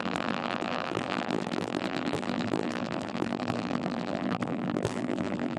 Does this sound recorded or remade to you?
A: remade